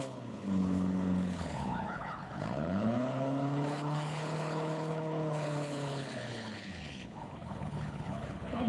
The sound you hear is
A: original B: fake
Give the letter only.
B